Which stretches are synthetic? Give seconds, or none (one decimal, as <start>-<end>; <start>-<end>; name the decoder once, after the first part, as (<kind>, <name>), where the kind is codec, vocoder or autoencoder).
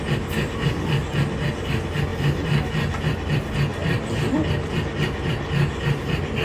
none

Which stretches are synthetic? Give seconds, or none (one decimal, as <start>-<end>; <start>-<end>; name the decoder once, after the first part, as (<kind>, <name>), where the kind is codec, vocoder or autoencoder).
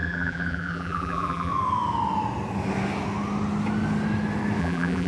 0.0-1.5 (vocoder, BigVGAN v2); 4.6-5.1